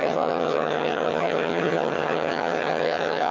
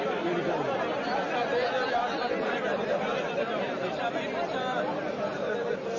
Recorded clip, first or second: second